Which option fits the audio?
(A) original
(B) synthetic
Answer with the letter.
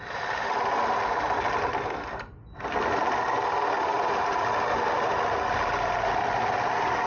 A